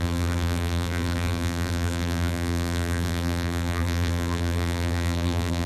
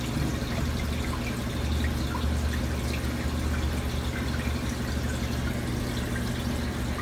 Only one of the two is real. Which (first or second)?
second